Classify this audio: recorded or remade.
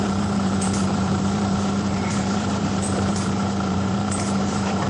remade